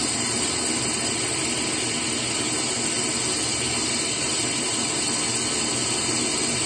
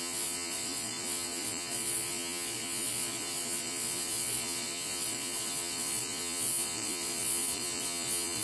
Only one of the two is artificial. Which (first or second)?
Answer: second